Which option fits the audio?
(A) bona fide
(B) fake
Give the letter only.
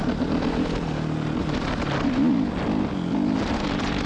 A